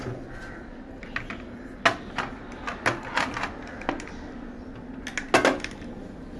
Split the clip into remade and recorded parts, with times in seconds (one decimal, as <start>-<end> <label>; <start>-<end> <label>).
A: 0.0-6.4 recorded